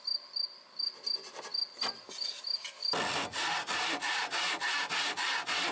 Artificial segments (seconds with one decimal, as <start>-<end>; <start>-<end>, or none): none